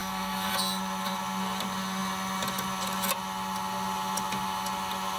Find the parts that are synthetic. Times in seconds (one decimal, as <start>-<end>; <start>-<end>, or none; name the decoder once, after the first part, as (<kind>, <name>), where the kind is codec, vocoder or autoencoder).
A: 0.0-0.5 (codec, SNAC)